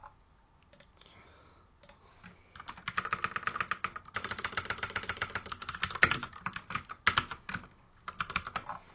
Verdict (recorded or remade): recorded